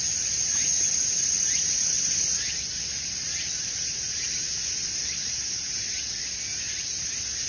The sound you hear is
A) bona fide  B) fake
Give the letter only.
A